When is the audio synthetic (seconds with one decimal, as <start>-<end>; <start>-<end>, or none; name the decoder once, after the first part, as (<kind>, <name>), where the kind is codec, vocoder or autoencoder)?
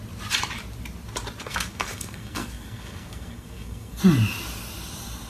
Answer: 1.4-4.0 (codec, SNAC)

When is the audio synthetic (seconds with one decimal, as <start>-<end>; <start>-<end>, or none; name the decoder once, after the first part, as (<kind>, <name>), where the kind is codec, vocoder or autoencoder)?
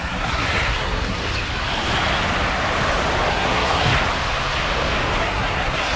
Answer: 0.0-1.2 (codec, SNAC); 3.3-3.9; 5.2-6.0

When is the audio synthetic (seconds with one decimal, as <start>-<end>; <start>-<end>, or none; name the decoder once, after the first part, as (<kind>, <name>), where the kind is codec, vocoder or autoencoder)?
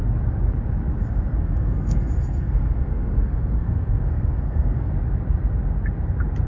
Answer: 1.0-4.9 (codec, SNAC)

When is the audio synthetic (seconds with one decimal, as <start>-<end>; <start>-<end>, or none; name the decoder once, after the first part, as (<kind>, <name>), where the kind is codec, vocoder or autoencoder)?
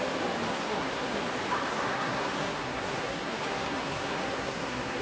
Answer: 0.5-1.2 (codec, SNAC); 1.7-5.0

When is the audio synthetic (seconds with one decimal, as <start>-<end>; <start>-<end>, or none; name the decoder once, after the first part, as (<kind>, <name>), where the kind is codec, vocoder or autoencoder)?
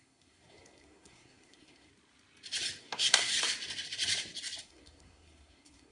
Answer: 0.0-1.9 (codec, SNAC); 2.8-3.3; 4.6-5.9